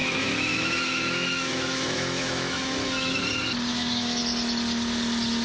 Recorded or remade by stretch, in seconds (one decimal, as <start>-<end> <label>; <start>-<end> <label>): 0.0-3.2 remade; 3.2-3.7 recorded; 3.7-4.2 remade; 4.2-5.4 recorded